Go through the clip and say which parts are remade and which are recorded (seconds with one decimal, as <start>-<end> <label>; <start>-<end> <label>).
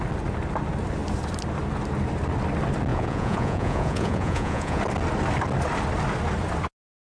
0.0-2.9 recorded; 2.9-4.8 remade; 4.8-7.2 recorded